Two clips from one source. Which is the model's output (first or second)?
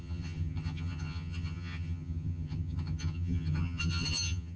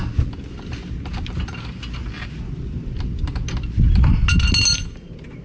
first